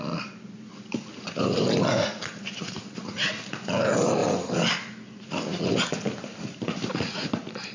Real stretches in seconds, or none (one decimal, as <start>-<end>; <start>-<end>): 0.0-7.7